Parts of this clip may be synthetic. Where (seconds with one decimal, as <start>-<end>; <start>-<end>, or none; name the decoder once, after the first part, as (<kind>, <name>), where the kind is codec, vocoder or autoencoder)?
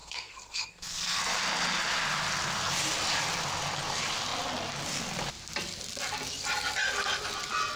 0.0-1.2 (codec, SNAC)